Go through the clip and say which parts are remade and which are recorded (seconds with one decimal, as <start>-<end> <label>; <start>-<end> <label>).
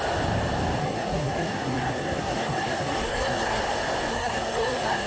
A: 0.0-0.8 recorded; 0.8-3.6 remade; 3.6-4.1 recorded; 4.1-5.1 remade